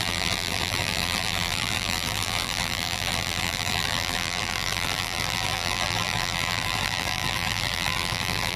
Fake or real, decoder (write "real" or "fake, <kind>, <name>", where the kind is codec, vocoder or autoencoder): fake, vocoder, BigVGAN v2